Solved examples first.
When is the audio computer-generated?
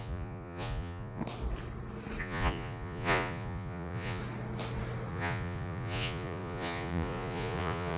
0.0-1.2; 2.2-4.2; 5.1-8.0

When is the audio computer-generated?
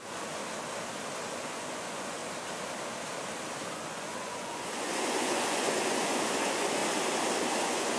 0.0-0.4; 1.3-2.2; 3.7-6.8; 7.6-8.0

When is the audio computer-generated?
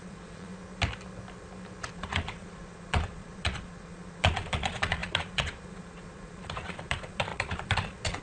0.0-0.5; 1.9-8.2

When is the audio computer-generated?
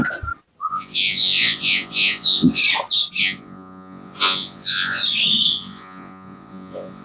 0.7-2.6; 3.2-5.0; 5.5-7.0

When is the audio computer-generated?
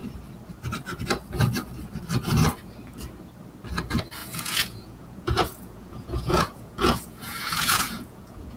4.2-8.6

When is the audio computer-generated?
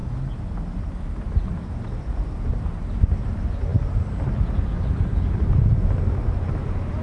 none